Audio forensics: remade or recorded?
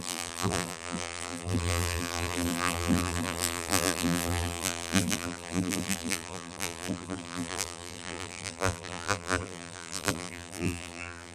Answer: remade